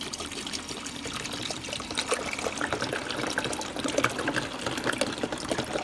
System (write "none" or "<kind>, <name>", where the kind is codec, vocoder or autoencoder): none